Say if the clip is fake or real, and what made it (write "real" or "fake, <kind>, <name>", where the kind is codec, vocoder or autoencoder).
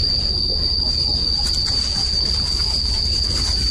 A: real